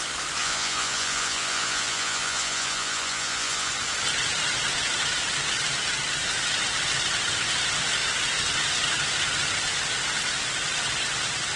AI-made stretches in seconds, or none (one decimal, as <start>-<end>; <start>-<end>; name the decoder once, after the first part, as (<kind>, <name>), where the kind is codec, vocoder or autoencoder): 0.4-3.7 (vocoder, Vocos)